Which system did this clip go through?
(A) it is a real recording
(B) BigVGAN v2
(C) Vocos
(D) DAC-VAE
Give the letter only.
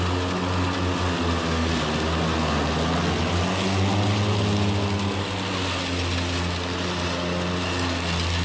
A